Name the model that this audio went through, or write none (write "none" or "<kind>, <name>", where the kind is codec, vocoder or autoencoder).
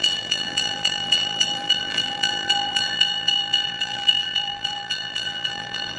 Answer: vocoder, BigVGAN v2